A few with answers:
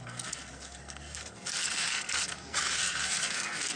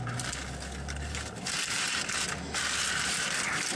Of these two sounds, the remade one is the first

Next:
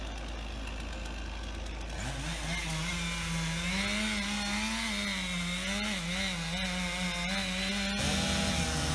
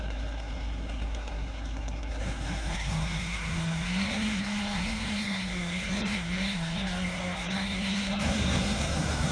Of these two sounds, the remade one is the second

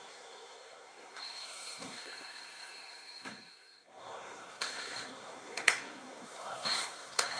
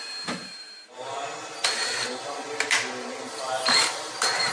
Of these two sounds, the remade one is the first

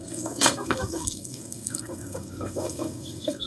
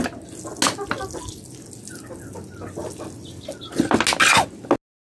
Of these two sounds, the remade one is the first